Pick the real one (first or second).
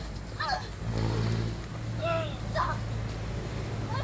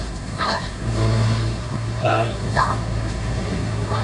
first